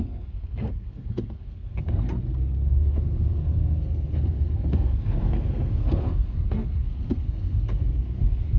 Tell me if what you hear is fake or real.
fake